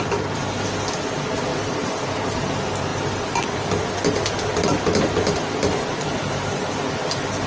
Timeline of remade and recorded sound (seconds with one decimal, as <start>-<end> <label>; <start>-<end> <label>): 0.0-7.5 recorded